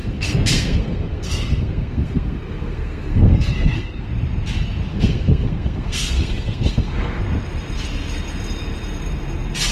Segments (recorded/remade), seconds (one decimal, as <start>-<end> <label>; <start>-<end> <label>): 0.0-4.1 remade; 4.1-4.9 recorded; 4.9-7.2 remade; 7.2-9.7 recorded